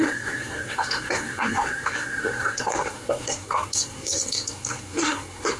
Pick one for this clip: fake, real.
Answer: fake